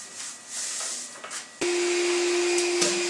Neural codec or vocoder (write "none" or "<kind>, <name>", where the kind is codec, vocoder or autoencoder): none